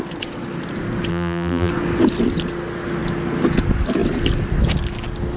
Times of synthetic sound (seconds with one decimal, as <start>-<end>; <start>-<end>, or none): 1.1-1.7